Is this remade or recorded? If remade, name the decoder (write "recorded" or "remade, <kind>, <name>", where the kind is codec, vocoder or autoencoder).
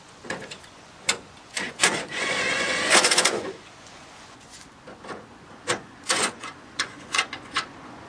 remade, vocoder, Vocos